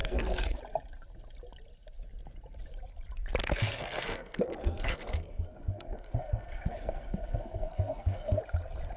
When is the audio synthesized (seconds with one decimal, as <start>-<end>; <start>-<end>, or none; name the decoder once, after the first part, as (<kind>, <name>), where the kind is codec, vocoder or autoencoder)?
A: 0.0-0.6 (codec, SNAC); 3.4-8.4